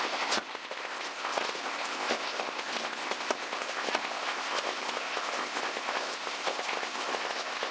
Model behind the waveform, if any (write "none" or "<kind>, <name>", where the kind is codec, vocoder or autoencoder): codec, ZipCodec